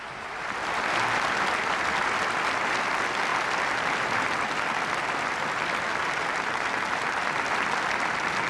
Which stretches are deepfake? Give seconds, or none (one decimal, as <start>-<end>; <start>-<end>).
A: none